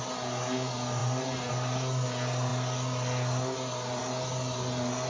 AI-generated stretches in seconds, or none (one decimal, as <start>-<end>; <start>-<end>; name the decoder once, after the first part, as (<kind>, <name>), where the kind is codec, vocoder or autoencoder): none